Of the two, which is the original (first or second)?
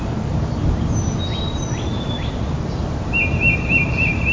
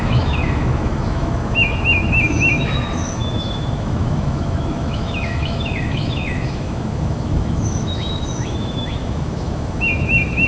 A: first